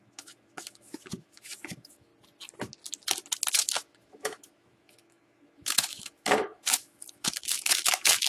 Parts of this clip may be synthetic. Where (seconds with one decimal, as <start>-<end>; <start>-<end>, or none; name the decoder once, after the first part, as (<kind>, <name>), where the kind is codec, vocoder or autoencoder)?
0.0-2.1 (autoencoder, DAC-VAE); 3.5-8.3